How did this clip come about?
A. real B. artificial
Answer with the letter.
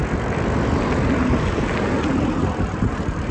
A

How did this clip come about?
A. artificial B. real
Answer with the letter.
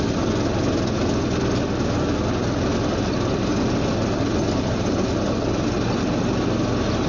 B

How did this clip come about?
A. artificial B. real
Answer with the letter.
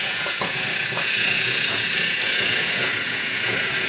A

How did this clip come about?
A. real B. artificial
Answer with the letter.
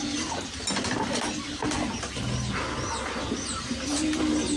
A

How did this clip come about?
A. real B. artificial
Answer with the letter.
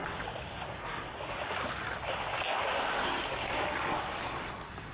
A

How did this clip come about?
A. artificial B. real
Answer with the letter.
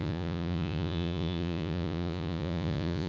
A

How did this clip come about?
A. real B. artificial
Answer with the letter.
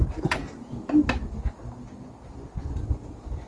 A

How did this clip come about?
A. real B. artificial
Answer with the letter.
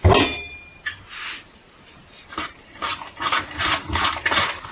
A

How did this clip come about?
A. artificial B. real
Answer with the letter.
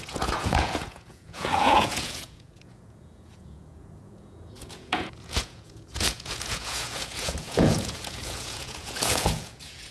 A